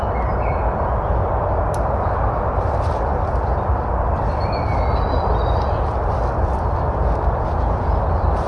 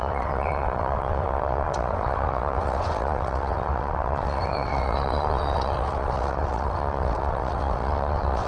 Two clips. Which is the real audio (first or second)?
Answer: first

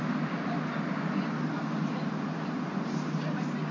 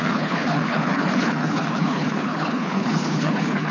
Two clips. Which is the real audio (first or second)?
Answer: first